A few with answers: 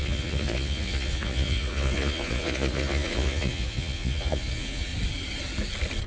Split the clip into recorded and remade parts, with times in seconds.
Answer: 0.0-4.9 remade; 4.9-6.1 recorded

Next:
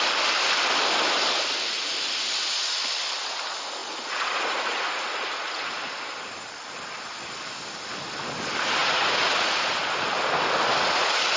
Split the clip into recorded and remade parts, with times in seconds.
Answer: 0.0-3.8 recorded; 3.8-5.9 remade; 5.9-8.8 recorded; 8.8-9.8 remade; 9.8-11.4 recorded

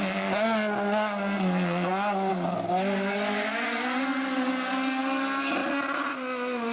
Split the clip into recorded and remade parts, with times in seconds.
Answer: 0.0-5.6 recorded; 5.6-6.2 remade; 6.2-6.7 recorded

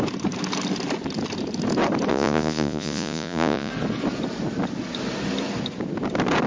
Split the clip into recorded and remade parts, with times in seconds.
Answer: 0.0-2.1 recorded; 2.1-3.7 remade; 3.7-6.5 recorded